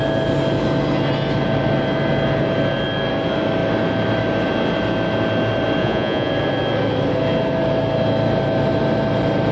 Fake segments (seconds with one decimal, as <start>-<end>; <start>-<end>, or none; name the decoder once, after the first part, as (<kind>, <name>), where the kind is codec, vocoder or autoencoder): 5.8-6.3 (vocoder, Vocos)